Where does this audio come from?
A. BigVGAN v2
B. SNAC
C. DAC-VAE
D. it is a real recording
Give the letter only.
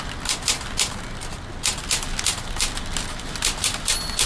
D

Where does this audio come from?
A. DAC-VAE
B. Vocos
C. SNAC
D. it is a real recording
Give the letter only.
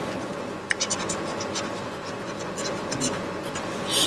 B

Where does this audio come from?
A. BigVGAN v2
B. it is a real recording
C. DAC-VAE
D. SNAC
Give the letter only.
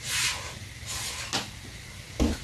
B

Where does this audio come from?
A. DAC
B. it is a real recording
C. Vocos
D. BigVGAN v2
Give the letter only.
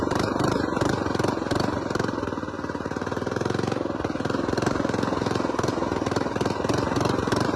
D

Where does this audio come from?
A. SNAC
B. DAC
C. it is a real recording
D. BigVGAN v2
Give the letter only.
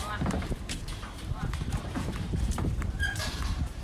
D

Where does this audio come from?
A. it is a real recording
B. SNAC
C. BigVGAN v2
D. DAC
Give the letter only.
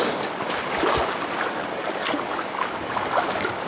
D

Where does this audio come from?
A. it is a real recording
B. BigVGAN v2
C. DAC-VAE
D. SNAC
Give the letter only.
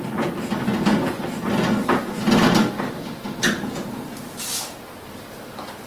A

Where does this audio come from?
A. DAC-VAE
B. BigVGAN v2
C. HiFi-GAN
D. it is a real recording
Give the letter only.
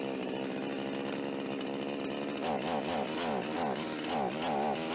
D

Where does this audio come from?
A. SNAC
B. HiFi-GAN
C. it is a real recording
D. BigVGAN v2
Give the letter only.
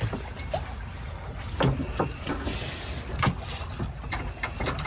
D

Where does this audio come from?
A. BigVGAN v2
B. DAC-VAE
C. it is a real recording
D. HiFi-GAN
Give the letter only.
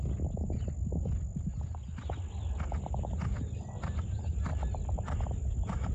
C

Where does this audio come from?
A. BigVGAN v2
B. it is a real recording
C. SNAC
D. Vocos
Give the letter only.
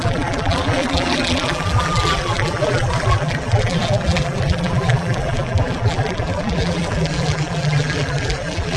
A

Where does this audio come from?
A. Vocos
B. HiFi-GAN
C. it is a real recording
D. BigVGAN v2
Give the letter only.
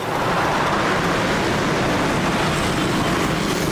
C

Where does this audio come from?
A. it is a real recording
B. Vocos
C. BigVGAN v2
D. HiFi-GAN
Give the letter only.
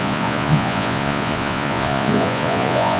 B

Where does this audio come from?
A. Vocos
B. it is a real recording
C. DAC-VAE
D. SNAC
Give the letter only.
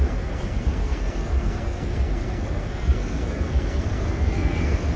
D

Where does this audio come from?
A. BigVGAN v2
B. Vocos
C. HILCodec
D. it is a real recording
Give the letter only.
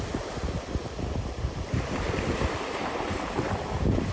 A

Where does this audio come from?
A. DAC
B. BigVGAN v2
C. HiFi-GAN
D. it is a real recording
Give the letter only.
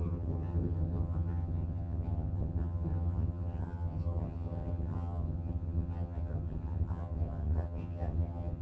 C